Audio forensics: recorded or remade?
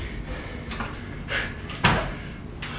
recorded